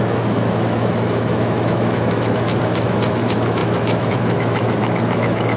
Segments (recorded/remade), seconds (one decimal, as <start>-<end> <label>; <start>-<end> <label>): 0.0-5.6 remade